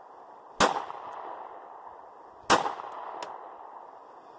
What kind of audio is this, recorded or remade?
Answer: recorded